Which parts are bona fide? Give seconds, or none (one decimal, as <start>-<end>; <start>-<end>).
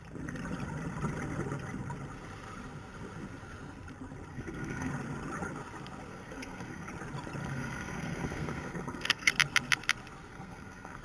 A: 0.0-4.3; 4.9-6.1; 6.9-7.4; 9.3-10.3